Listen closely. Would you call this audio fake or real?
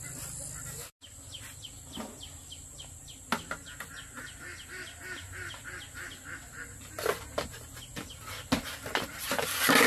real